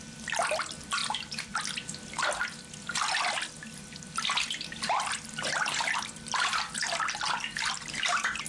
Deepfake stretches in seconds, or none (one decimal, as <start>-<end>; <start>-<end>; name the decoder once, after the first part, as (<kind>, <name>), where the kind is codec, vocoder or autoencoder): none